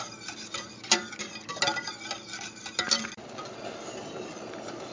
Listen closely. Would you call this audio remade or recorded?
recorded